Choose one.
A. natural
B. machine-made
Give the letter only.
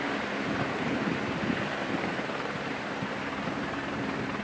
B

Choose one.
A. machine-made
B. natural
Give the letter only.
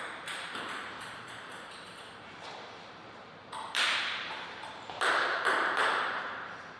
A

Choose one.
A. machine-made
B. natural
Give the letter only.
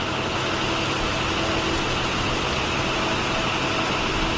B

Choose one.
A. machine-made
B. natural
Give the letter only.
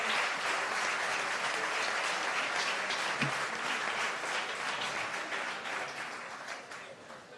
B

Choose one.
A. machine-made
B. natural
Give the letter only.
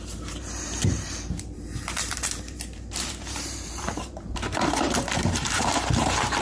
A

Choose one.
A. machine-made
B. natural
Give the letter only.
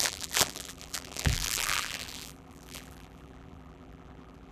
A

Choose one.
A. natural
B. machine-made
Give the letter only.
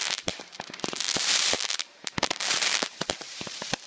B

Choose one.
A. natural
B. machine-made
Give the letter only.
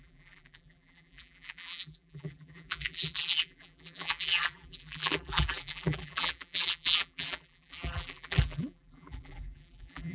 B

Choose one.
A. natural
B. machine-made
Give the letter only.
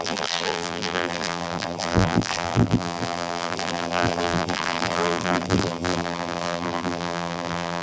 B